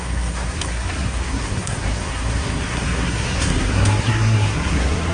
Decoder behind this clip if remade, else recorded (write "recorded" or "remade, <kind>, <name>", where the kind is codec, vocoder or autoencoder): remade, codec, SNAC